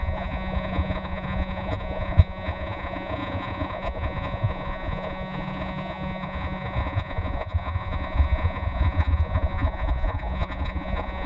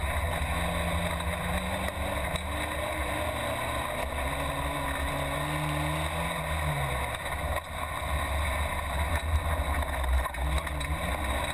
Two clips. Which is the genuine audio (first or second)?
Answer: second